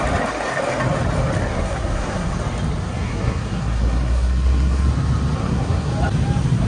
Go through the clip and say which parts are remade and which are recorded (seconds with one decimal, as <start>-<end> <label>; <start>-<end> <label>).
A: 0.0-1.5 recorded; 1.5-2.3 remade; 2.3-2.9 recorded; 2.9-4.9 remade; 4.9-5.4 recorded; 5.4-5.9 remade; 5.9-6.7 recorded